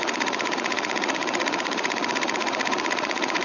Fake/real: fake